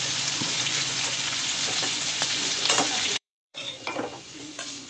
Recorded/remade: remade